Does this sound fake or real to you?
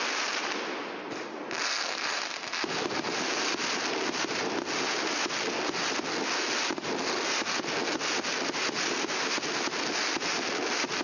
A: real